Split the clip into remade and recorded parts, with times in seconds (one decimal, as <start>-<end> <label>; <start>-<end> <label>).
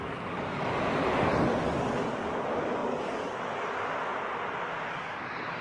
0.0-1.0 remade; 1.0-1.7 recorded; 1.7-4.1 remade; 4.1-4.9 recorded; 4.9-5.6 remade